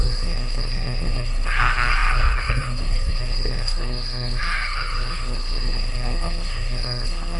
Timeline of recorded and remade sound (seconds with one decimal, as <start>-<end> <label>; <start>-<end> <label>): 0.0-7.4 remade